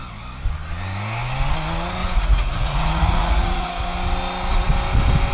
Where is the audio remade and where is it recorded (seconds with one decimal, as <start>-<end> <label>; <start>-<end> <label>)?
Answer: 0.0-2.0 recorded; 2.0-3.7 remade; 3.7-5.3 recorded